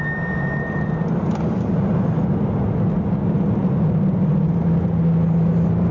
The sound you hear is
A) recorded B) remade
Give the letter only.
A